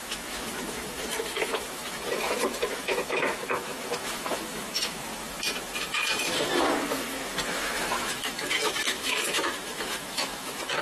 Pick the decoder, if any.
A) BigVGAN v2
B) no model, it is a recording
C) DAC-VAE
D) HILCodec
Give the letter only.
C